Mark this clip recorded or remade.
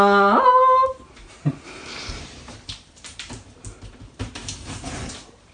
remade